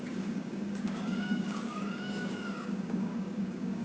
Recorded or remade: remade